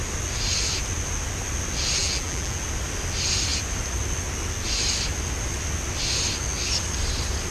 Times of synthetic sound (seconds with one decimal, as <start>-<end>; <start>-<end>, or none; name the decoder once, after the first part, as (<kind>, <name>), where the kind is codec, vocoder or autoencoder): 2.0-2.6 (vocoder, BigVGAN v2)